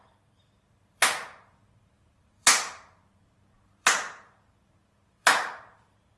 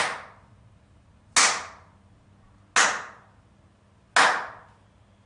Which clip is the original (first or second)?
second